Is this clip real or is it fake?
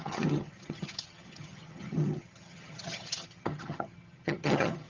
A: fake